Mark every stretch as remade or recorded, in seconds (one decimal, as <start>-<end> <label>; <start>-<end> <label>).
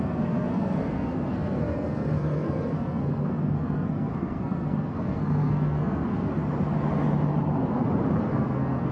0.0-6.3 remade; 6.3-8.2 recorded; 8.2-8.9 remade